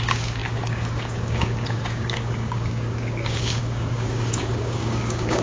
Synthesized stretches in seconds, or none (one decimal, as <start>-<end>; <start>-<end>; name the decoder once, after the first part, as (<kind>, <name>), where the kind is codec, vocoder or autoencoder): 0.0-5.4 (codec, DAC)

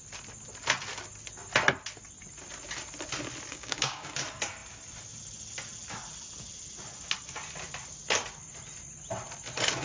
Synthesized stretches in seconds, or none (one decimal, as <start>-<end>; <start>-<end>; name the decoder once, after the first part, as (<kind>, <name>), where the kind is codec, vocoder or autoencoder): 3.5-4.1 (codec, DAC)

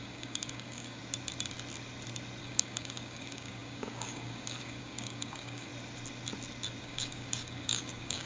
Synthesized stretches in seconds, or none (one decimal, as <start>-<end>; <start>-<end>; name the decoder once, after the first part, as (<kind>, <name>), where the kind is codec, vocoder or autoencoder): 0.0-1.0 (codec, DAC); 2.4-5.7; 6.8-8.3

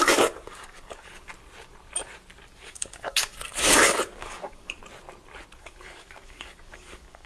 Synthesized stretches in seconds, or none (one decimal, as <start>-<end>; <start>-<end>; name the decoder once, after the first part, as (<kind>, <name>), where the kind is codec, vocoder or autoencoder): 0.0-1.3 (codec, DAC); 2.6-4.8; 5.6-7.3

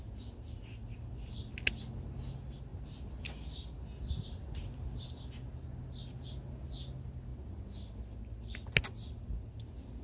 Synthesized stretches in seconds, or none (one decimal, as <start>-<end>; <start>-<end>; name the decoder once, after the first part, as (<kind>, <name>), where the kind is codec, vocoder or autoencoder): none

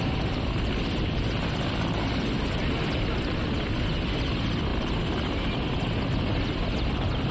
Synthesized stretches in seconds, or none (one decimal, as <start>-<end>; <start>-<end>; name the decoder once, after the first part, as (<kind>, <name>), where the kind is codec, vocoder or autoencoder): none

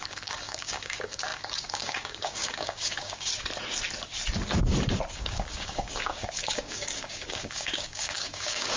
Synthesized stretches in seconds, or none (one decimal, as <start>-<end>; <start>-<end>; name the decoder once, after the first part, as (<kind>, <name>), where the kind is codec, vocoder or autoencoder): 0.0-3.3 (codec, DAC); 5.1-8.8

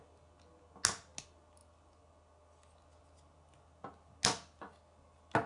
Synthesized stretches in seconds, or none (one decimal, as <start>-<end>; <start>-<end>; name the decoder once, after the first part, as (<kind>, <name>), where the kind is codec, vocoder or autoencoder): none